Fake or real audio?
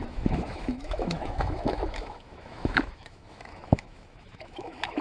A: fake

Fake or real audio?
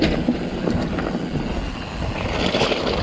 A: real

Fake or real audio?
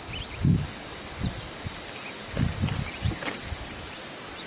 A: real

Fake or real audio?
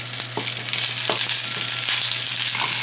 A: real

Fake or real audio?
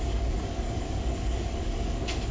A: fake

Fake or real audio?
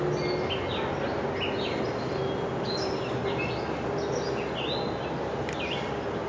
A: real